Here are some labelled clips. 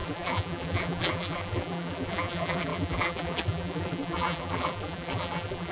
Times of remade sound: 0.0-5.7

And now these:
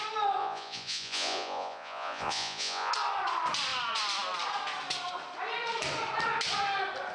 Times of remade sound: 0.4-2.9